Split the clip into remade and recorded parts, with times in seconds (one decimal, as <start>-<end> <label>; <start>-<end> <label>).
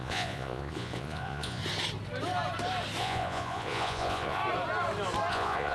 0.0-1.6 remade; 1.6-3.0 recorded; 3.0-4.4 remade; 4.4-5.3 recorded; 5.3-5.7 remade